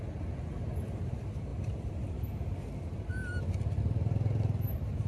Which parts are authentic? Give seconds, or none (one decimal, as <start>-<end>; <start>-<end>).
0.0-5.1